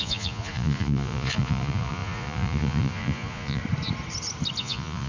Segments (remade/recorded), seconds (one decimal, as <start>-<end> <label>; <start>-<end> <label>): 0.0-3.6 remade; 3.6-4.6 recorded; 4.6-5.1 remade